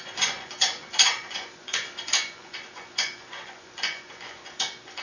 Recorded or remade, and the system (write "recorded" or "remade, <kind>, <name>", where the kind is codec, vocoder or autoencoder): remade, vocoder, Vocos